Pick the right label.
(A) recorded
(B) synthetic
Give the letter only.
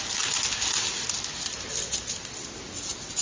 A